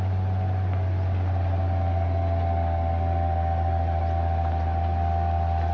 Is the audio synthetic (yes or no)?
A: no